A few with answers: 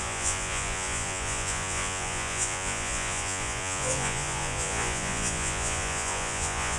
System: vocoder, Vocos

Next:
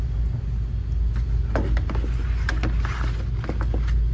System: none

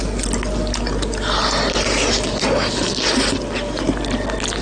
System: none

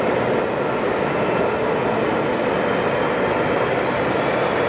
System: none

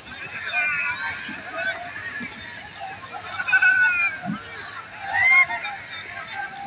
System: none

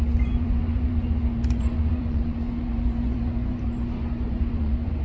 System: vocoder, Vocos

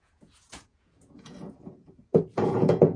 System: vocoder, Vocos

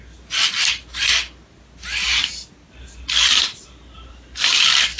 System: none